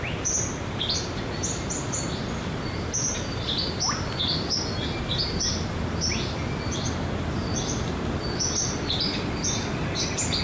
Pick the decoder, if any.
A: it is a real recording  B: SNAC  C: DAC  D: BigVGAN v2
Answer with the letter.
A